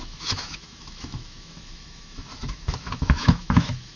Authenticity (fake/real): fake